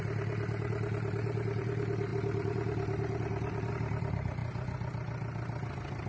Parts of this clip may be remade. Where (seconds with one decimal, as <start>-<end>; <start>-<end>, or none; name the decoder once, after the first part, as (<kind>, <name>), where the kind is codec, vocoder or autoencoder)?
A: 0.0-4.4 (vocoder, BigVGAN v2)